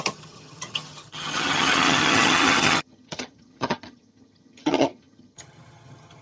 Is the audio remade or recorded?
remade